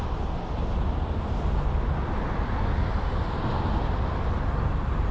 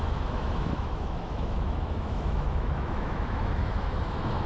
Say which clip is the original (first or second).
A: first